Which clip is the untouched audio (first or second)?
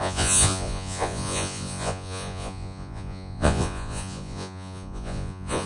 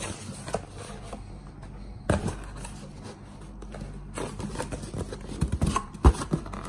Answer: second